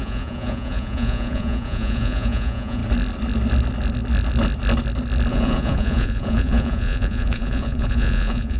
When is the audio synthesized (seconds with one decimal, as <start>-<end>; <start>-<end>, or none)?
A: 0.0-2.8; 5.3-8.6